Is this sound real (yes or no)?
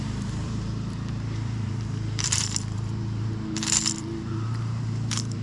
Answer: no